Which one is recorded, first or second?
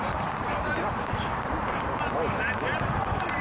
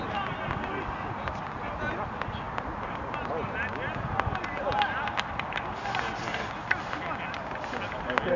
second